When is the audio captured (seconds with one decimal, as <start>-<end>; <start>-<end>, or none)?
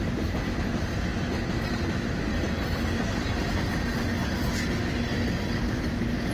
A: 0.0-6.3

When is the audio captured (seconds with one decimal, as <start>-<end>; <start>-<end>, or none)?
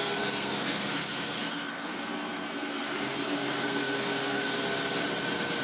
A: 4.5-5.6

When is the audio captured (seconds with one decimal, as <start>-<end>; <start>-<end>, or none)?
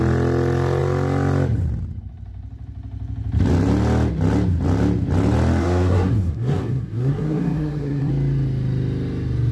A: 0.0-5.6; 8.1-9.5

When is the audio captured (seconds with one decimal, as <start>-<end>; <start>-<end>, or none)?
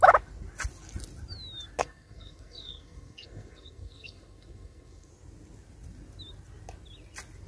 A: 0.0-1.8; 5.1-7.5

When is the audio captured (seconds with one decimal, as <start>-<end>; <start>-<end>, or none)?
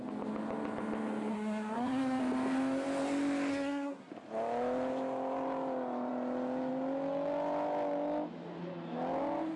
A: 0.0-1.3; 2.2-3.5; 4.1-9.6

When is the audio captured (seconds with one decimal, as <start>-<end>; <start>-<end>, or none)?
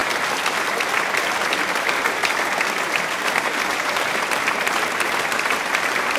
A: 0.0-6.2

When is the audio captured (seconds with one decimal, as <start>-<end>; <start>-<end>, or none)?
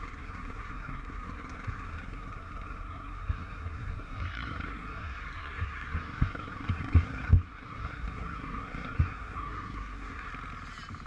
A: 10.3-11.1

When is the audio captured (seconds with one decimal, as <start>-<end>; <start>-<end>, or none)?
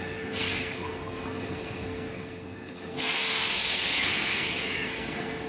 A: none